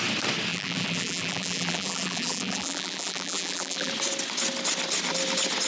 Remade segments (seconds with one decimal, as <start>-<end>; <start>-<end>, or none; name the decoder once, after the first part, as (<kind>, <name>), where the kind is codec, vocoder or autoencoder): 0.5-3.9 (vocoder, BigVGAN v2)